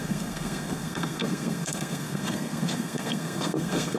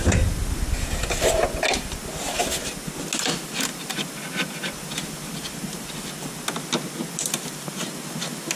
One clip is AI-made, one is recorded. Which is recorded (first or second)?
second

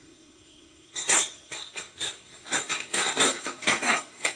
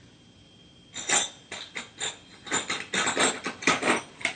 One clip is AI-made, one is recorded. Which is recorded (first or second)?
second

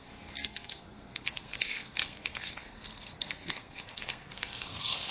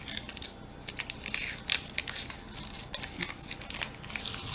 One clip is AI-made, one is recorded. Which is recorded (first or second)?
second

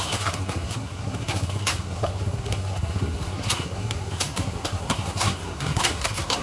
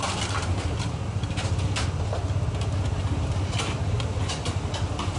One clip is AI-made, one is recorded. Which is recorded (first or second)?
second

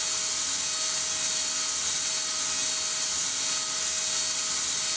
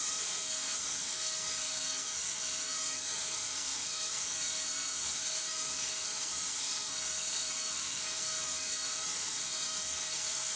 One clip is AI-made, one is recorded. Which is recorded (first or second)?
first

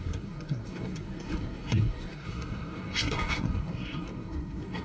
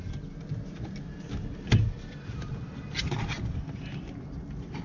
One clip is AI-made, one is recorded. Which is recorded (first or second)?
second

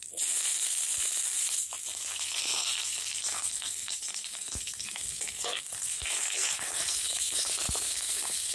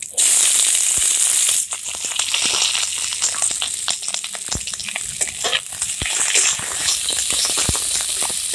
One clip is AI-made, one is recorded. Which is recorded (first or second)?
second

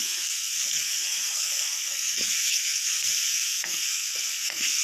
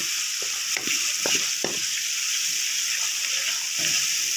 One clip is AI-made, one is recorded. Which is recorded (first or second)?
second